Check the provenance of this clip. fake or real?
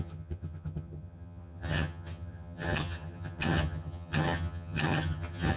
fake